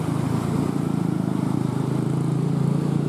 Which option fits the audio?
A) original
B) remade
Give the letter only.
B